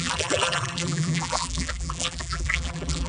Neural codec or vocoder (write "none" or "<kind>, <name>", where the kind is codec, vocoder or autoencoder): vocoder, BigVGAN v2